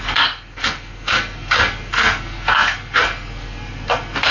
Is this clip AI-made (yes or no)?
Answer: yes